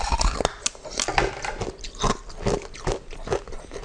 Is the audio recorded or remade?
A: recorded